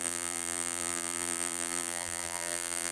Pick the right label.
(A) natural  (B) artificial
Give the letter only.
B